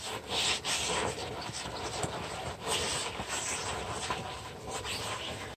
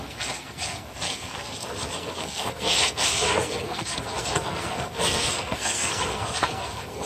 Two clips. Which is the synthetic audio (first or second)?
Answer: second